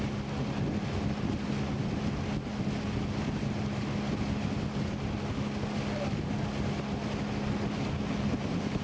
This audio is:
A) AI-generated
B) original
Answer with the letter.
B